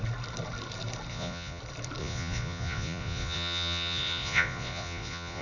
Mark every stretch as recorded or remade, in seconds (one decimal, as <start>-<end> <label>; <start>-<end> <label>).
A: 0.0-1.1 recorded; 1.1-1.6 remade; 1.6-2.0 recorded; 2.0-5.4 remade